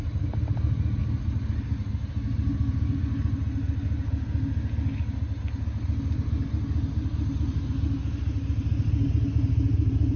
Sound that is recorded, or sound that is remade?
recorded